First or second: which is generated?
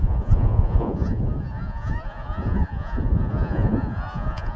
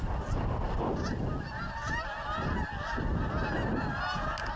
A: first